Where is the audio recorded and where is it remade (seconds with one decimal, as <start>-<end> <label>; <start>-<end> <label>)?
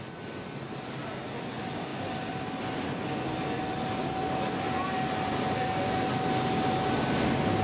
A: 0.0-7.6 recorded